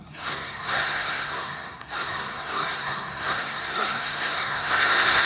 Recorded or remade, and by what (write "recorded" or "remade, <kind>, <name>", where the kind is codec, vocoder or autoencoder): remade, codec, SNAC